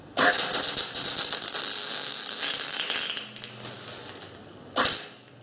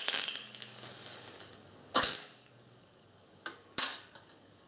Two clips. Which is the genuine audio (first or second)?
first